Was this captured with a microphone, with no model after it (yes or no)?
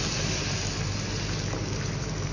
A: yes